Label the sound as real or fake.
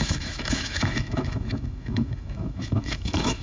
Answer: fake